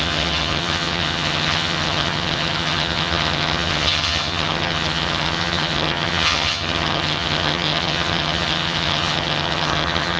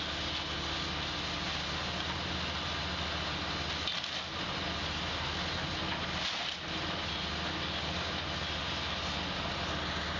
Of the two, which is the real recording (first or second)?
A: second